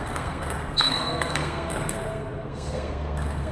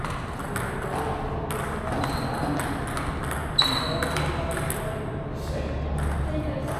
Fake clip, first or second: first